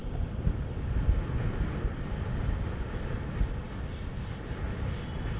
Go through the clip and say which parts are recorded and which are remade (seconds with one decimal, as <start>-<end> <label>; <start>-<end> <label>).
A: 0.0-5.4 recorded